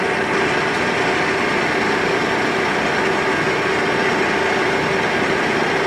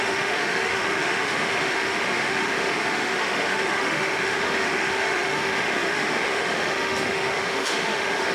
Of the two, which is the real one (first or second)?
first